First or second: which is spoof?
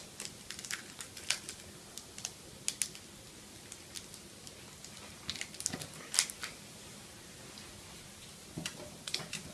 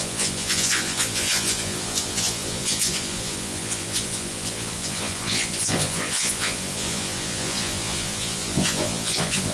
second